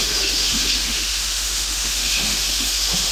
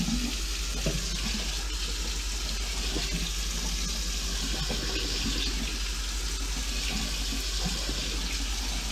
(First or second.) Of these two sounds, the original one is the second